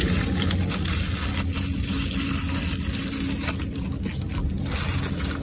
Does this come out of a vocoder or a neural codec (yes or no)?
no